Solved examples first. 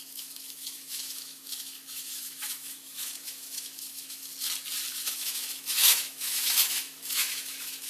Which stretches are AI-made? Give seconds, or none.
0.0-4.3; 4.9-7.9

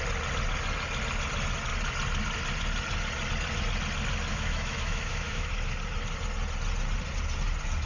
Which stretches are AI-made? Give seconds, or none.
4.3-5.5

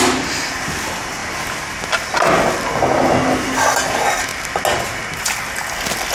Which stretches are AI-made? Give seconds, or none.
none

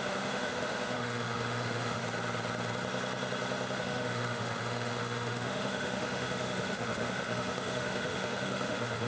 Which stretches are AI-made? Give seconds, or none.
0.0-2.0; 3.8-9.1

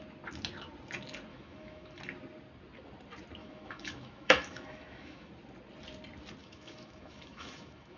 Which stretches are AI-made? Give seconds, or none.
1.3-2.0; 3.4-5.3; 6.4-8.0